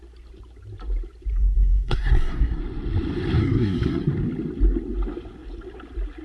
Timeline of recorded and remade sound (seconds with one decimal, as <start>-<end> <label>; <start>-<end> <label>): 0.0-1.3 recorded; 1.3-2.6 remade; 2.6-3.4 recorded; 3.4-4.1 remade; 4.1-6.2 recorded